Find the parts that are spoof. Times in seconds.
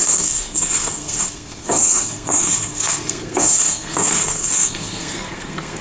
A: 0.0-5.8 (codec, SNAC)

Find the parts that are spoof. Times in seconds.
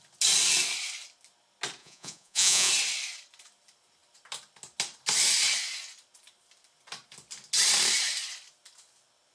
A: 1.8-2.7 (vocoder, Vocos)